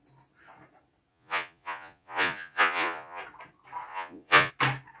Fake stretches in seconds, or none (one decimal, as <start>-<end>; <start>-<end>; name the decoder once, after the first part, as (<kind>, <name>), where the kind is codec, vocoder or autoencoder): 1.1-3.2 (vocoder, Vocos); 3.9-4.5

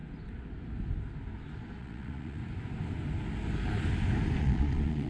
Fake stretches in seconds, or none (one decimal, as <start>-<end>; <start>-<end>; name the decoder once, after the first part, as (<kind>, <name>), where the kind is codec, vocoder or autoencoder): 1.8-2.4 (vocoder, Vocos); 4.4-5.1

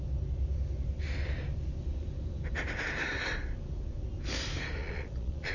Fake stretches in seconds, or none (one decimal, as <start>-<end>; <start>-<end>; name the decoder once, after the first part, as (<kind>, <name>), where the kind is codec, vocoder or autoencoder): 4.8-5.5 (vocoder, Vocos)

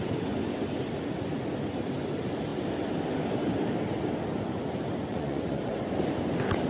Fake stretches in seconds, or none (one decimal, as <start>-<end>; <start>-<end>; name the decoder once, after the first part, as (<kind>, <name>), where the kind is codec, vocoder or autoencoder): 5.1-5.7 (vocoder, Vocos)

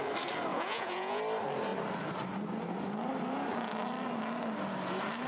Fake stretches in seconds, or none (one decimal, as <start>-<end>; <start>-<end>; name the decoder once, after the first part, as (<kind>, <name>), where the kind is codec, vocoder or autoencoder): 0.5-1.2 (vocoder, Vocos)

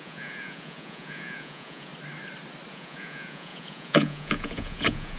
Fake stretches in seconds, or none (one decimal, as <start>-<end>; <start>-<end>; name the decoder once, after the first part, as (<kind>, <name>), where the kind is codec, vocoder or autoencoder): 0.0-1.9 (vocoder, Vocos); 2.7-5.2

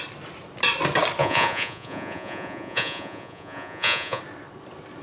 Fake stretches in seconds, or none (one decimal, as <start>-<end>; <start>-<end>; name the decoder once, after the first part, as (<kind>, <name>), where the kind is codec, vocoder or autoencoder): 1.2-4.2 (vocoder, Vocos)